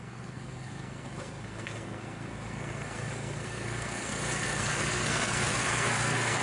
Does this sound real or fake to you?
fake